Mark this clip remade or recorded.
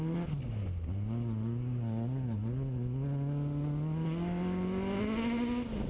recorded